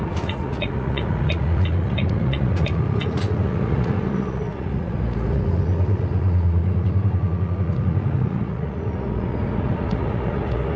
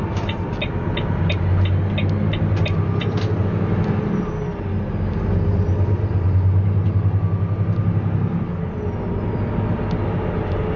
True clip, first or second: second